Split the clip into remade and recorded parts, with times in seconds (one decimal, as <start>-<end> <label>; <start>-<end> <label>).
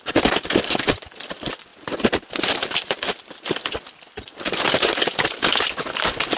0.0-1.7 remade; 1.7-2.4 recorded; 2.4-6.4 remade